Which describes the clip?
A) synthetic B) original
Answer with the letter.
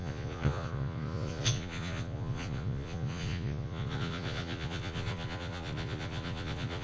A